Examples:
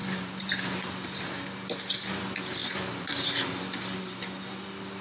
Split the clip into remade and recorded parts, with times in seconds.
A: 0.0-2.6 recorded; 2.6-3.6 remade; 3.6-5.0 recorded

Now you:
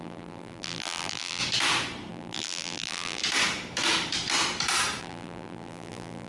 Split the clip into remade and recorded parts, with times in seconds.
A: 0.0-1.4 remade; 1.4-2.1 recorded; 2.1-3.2 remade; 3.2-5.0 recorded; 5.0-6.3 remade